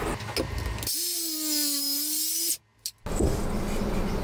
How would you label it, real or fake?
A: real